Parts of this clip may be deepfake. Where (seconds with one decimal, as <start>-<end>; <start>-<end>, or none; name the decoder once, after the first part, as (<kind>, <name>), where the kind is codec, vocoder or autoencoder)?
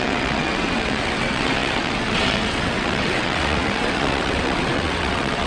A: 0.0-5.5 (vocoder, WaveNeXt)